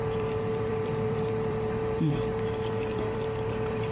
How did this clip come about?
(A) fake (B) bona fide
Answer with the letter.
A